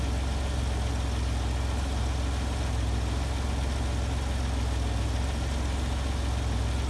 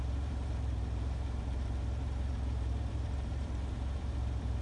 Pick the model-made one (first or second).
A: second